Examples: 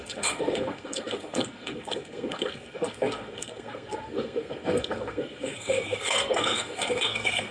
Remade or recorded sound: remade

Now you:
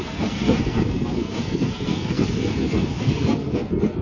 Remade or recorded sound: remade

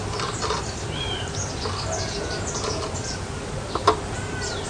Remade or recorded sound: recorded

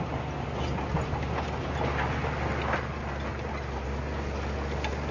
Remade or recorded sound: recorded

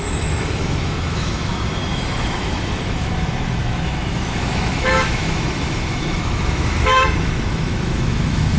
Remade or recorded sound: remade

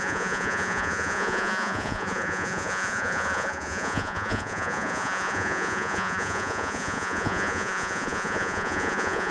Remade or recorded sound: remade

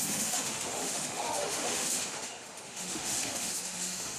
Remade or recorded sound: remade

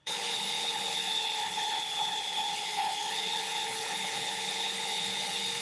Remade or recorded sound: remade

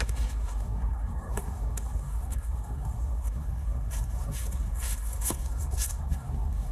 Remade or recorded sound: remade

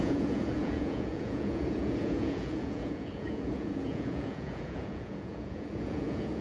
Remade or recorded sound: remade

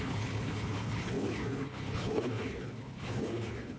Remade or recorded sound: remade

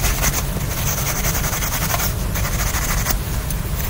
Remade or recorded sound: recorded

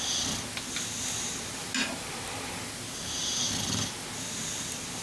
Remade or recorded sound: recorded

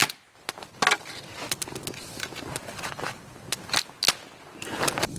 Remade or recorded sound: recorded